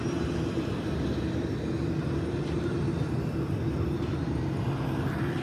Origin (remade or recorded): recorded